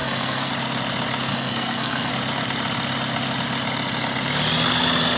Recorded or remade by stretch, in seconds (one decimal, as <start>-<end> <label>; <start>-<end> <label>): 0.0-0.5 remade; 0.5-1.3 recorded; 1.3-2.1 remade; 2.1-5.2 recorded